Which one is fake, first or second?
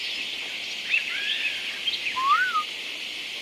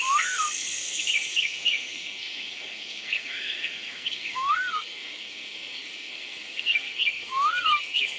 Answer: second